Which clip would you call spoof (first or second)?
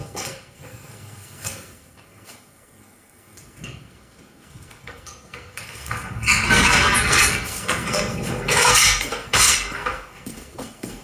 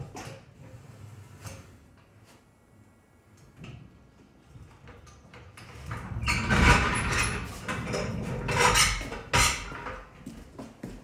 first